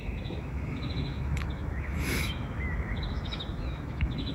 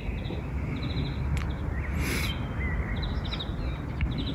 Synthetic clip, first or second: first